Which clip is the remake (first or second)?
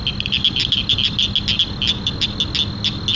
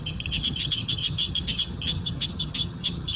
second